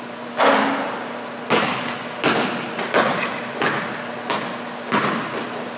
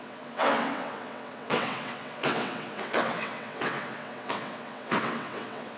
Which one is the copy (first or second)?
second